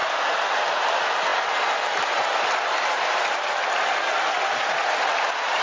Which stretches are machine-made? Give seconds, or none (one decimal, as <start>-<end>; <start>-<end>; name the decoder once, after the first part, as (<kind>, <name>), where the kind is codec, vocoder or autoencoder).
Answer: none